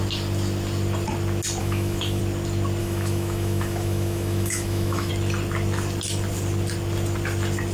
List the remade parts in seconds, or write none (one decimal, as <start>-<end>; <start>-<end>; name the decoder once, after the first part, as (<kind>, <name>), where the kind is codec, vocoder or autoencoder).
1.6-2.2 (autoencoder, DAC-VAE); 2.8-5.1